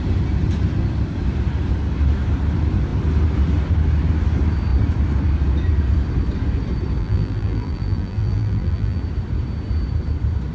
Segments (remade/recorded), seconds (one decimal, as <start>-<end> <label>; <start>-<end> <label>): 0.0-7.0 recorded; 7.0-9.0 remade; 9.0-10.5 recorded